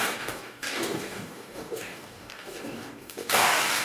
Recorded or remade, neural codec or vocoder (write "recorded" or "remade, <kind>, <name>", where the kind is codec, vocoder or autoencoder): remade, codec, DAC